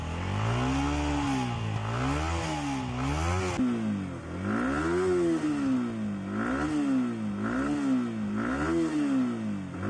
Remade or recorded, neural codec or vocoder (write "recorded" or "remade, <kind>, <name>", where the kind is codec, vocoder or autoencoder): recorded